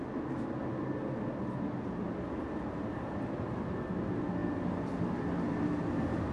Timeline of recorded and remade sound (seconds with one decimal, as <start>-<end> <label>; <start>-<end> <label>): 0.0-6.3 recorded